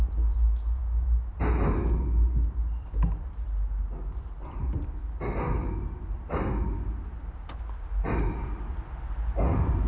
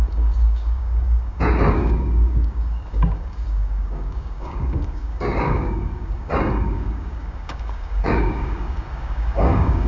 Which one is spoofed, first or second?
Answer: second